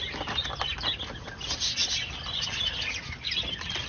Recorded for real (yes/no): yes